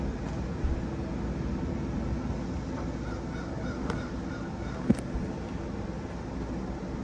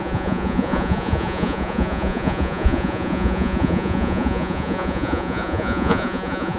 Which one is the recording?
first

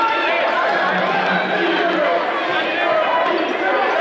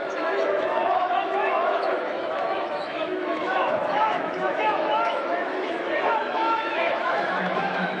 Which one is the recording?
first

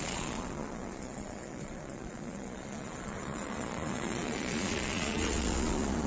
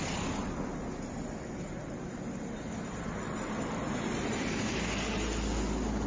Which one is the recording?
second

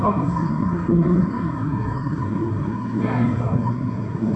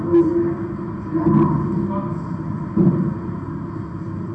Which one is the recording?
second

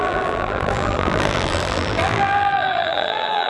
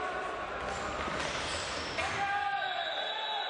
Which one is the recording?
second